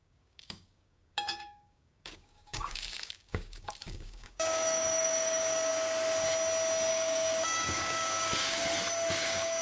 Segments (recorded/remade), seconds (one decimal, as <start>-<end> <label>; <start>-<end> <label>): 0.0-5.7 remade; 5.7-6.9 recorded; 6.9-8.6 remade; 8.6-9.1 recorded; 9.1-9.6 remade